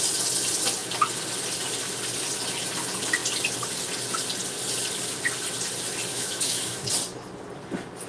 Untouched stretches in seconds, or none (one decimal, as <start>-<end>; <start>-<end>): 0.0-6.1; 6.9-8.1